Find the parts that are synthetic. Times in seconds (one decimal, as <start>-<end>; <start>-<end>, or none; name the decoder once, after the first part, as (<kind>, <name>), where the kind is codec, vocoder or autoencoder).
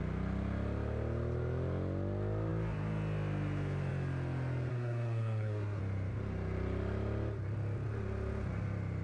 4.7-5.8 (codec, SNAC)